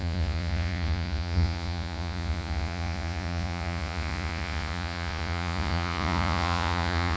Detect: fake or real fake